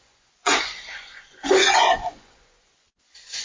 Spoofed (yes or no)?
yes